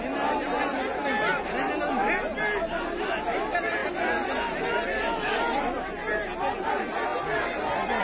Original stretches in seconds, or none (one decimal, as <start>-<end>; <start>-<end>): 0.0-8.0

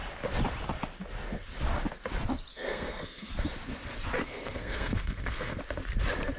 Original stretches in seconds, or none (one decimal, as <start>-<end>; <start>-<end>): 0.0-2.5; 3.3-4.2; 5.6-6.4

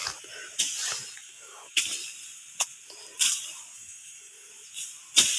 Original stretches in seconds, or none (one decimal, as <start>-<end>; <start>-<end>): 0.0-1.2; 1.8-3.7; 4.5-5.4

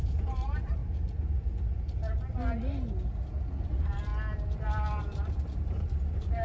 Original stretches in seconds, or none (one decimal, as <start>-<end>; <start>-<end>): 0.8-3.6; 4.1-5.0

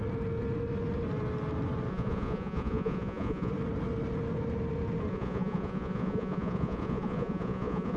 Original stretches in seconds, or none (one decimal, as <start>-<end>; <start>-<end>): 0.0-1.9; 3.5-5.1

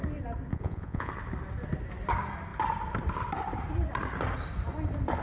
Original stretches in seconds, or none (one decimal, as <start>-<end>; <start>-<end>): 0.0-0.5; 1.1-5.2

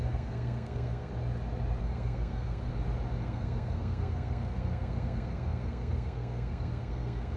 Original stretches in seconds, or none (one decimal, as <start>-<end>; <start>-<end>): 1.1-1.8; 2.7-3.2